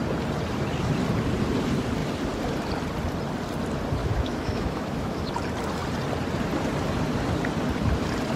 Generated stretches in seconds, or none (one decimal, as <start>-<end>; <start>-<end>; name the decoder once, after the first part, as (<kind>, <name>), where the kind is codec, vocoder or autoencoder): 4.0-5.3 (autoencoder, DAC-VAE)